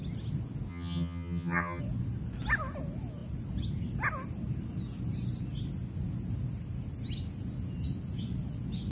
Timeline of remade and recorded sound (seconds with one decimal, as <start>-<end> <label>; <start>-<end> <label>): 0.0-0.7 recorded; 0.7-1.8 remade; 1.8-8.9 recorded